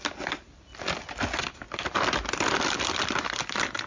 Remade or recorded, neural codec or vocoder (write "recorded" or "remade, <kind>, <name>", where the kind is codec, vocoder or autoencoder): recorded